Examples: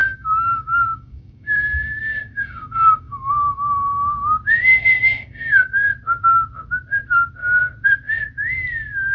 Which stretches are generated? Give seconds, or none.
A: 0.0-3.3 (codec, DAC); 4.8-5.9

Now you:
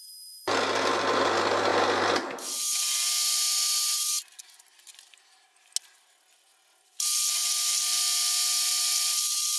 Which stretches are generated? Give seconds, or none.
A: none